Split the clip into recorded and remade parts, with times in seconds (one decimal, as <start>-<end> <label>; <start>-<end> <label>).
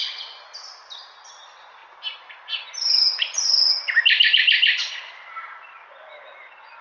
0.0-6.8 recorded